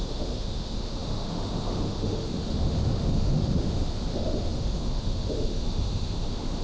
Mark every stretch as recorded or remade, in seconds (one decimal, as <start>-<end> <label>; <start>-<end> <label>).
0.0-6.6 remade